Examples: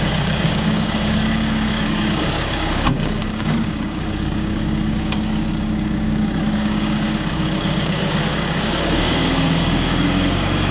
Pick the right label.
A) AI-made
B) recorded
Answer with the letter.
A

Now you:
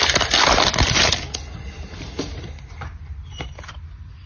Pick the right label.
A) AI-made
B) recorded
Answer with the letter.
B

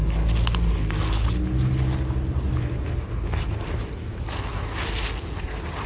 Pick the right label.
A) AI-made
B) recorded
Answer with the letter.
B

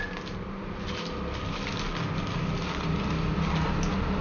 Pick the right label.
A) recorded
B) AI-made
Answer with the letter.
A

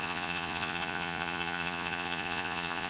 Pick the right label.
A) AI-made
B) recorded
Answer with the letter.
A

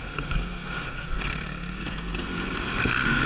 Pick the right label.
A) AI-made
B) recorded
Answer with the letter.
A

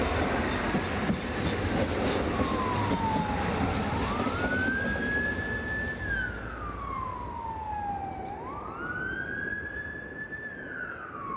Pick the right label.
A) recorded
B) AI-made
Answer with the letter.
A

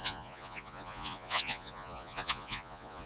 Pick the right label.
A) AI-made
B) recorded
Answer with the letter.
A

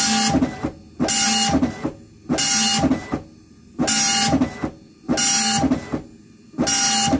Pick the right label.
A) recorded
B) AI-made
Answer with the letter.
A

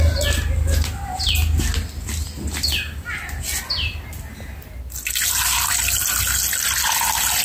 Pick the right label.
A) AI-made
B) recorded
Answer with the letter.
B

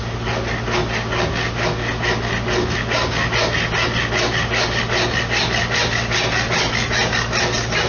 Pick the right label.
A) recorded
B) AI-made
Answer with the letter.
A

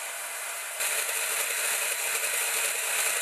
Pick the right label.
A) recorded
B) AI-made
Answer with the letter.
A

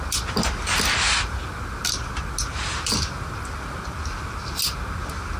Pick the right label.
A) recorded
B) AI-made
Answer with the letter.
A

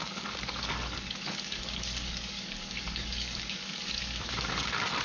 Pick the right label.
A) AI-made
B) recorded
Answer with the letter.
A